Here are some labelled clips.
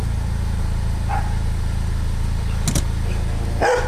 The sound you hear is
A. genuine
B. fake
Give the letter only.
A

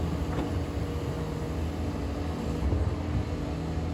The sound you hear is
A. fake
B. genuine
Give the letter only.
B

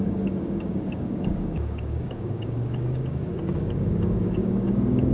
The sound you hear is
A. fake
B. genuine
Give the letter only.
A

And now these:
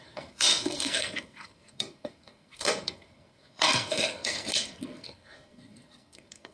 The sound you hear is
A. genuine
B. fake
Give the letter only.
B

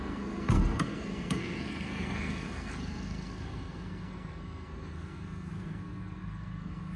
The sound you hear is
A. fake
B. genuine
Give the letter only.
A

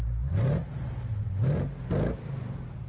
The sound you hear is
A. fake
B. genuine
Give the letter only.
B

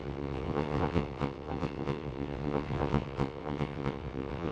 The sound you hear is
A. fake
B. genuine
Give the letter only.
A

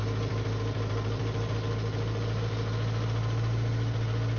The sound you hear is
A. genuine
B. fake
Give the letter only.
A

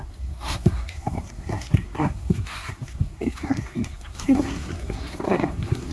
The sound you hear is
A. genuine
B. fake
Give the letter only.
B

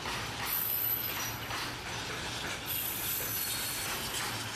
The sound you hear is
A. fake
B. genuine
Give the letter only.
B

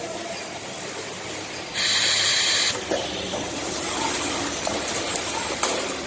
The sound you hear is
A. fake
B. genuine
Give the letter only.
B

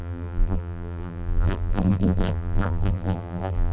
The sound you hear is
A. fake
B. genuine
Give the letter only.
A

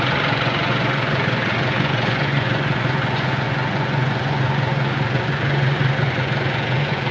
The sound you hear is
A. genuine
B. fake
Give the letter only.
B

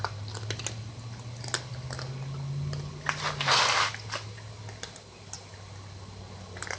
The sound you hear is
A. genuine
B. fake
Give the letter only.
A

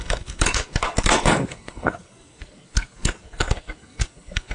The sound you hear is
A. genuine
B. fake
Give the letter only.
B